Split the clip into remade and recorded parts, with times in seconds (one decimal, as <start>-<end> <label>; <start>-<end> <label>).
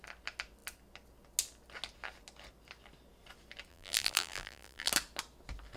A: 0.0-3.7 recorded; 3.7-4.9 remade; 4.9-5.8 recorded